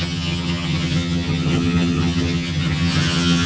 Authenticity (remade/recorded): remade